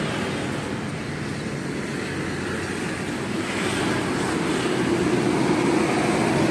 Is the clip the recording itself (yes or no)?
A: yes